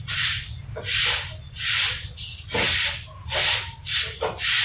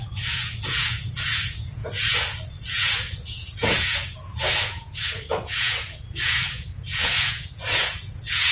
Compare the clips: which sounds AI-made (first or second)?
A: second